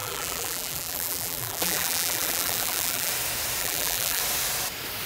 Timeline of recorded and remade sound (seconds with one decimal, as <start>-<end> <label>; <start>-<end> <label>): 0.0-3.1 remade; 3.1-3.6 recorded; 3.6-4.2 remade; 4.2-5.1 recorded